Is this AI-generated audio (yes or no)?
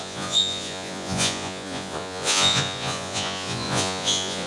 yes